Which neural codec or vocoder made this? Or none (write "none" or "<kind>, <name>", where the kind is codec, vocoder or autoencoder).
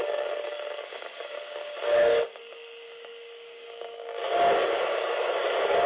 codec, DAC